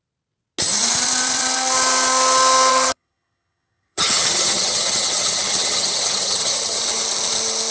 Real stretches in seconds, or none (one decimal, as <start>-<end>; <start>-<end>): 0.0-2.7; 6.8-7.7